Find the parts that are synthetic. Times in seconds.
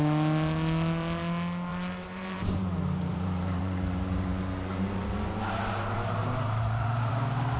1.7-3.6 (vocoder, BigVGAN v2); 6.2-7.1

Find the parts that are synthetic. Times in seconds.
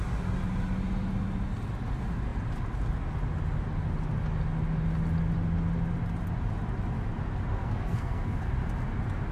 7.5-8.5 (codec, SNAC)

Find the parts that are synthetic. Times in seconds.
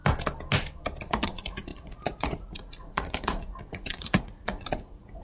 1.1-5.2 (vocoder, Vocos)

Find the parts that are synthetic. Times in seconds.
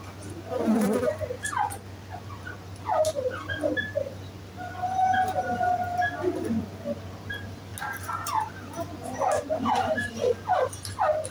none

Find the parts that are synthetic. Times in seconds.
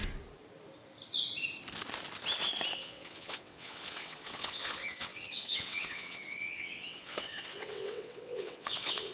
2.7-9.1 (vocoder, WaveNeXt)